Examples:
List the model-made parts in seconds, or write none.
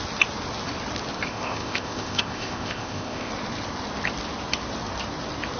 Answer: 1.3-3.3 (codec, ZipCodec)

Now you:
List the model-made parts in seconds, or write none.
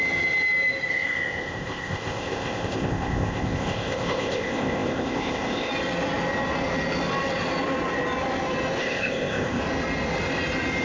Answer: 0.9-5.7 (codec, ZipCodec); 8.8-9.6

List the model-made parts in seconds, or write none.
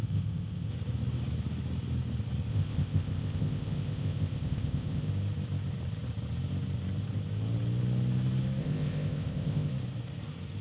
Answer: 0.0-0.7 (codec, ZipCodec); 2.5-5.1; 8.6-9.7